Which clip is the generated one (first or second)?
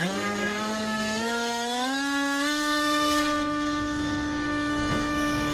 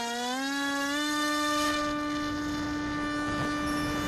first